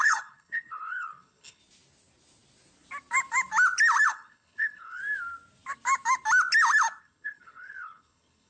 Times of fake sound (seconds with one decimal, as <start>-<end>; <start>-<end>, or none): 0.0-1.6; 4.1-5.0; 7.0-8.5